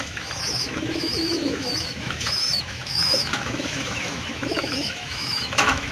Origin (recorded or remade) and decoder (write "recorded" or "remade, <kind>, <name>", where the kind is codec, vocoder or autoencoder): remade, autoencoder, DAC-VAE